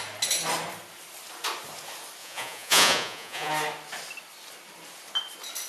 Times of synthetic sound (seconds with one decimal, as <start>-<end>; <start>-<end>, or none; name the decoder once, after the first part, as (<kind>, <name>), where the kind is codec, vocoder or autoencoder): 2.2-3.5 (vocoder, Vocos)